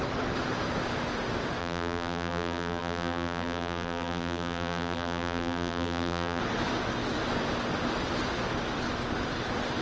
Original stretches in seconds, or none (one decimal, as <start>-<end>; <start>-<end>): 0.0-1.6; 6.4-9.8